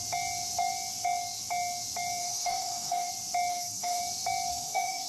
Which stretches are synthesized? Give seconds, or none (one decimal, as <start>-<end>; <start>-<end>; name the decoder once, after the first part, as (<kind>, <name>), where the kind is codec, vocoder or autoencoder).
2.2-3.1 (codec, DAC); 3.5-4.0; 4.5-5.1